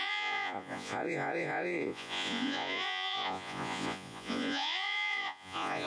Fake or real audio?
fake